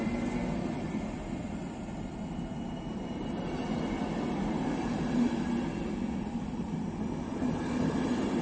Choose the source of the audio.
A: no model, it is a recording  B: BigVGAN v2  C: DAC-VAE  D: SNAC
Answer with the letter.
A